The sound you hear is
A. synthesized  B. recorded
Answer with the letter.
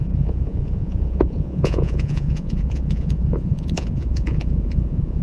A